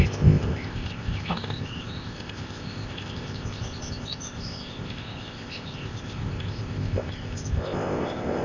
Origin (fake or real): fake